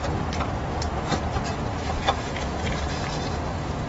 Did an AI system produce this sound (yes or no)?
no